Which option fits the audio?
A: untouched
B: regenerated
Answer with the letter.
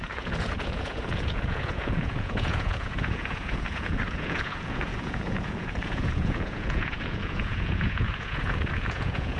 B